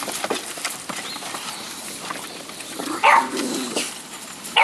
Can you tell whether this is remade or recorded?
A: recorded